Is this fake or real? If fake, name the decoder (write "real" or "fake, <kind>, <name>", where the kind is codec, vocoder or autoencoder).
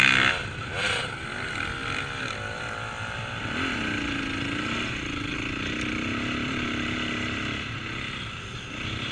real